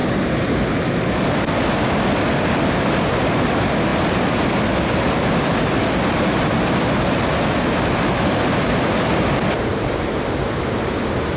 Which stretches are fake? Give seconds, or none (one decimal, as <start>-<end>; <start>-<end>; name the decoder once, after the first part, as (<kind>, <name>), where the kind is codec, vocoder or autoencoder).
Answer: none